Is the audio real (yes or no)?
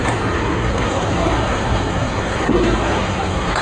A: no